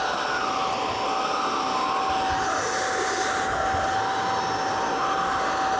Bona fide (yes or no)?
yes